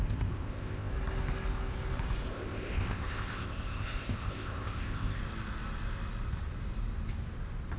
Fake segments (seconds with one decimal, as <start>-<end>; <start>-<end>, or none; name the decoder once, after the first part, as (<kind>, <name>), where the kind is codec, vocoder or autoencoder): 0.0-0.9 (codec, ZipCodec); 2.3-5.2